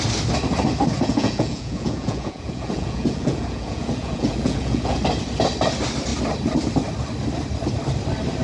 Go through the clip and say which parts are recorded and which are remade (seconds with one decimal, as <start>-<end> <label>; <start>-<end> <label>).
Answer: 0.0-1.1 recorded; 1.1-5.0 remade; 5.0-8.4 recorded